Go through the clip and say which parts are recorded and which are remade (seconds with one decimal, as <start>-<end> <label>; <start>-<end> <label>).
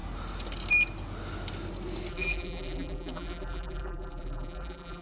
0.0-2.1 recorded; 2.1-5.0 remade